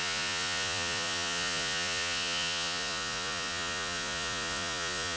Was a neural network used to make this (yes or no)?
yes